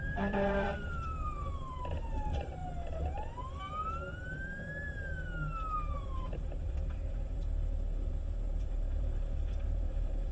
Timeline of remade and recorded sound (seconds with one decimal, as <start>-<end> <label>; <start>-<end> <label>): 0.0-2.6 remade; 2.6-6.0 recorded; 6.0-7.4 remade; 7.4-8.1 recorded; 8.1-10.3 remade